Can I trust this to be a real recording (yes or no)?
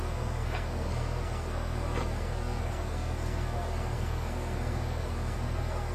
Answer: no